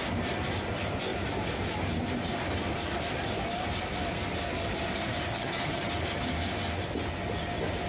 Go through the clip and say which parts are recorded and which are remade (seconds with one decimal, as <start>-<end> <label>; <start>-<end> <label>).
0.0-5.3 recorded; 5.3-5.9 remade; 5.9-7.9 recorded